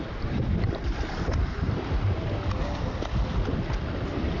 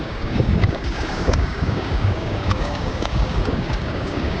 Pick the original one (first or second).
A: first